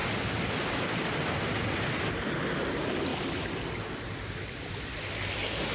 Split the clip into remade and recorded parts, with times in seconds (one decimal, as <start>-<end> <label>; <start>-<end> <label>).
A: 0.0-2.2 remade; 2.2-3.1 recorded; 3.1-4.7 remade; 4.7-5.7 recorded